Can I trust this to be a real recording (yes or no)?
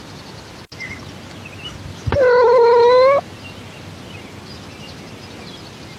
yes